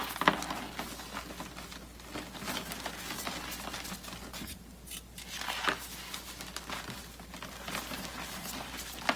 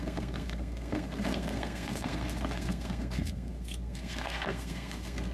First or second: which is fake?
second